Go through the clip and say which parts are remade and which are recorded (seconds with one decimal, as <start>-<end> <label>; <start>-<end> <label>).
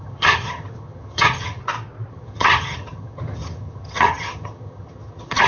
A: 0.0-1.6 remade; 1.6-2.1 recorded; 2.1-5.5 remade